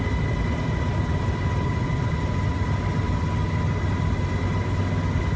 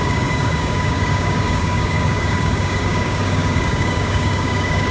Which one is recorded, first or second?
first